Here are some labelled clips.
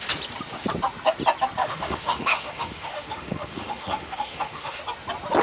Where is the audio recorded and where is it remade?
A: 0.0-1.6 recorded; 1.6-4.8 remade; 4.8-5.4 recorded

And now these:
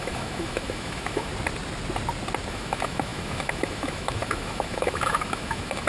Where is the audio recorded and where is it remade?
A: 0.0-1.3 remade; 1.3-2.5 recorded; 2.5-5.9 remade

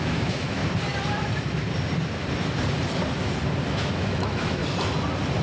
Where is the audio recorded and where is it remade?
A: 0.0-0.6 remade; 0.6-3.7 recorded; 3.7-4.6 remade; 4.6-5.4 recorded

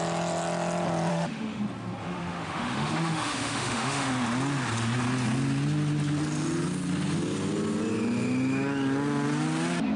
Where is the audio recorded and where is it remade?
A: 0.0-1.1 recorded; 1.1-1.6 remade; 1.6-2.0 recorded; 2.0-4.1 remade; 4.1-10.0 recorded

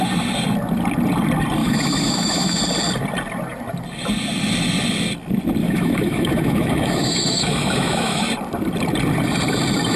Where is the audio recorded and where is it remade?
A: 0.0-1.6 recorded; 1.6-2.6 remade; 2.6-5.6 recorded; 5.6-8.2 remade; 8.2-10.0 recorded